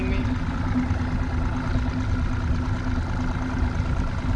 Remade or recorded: recorded